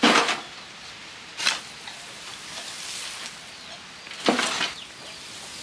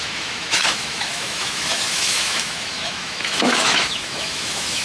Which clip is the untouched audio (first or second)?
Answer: first